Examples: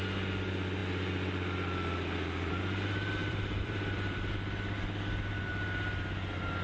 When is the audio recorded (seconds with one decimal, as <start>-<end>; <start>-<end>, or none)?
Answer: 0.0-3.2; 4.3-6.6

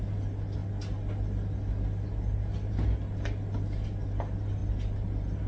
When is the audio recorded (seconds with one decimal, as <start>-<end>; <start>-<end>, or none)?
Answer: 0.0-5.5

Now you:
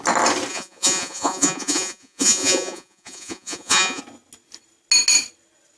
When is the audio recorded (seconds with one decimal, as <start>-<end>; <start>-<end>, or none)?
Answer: 0.0-0.5; 4.0-5.8

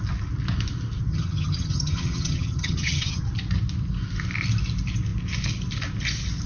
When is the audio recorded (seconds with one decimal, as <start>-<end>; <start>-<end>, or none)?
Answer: 0.0-1.1; 3.2-6.5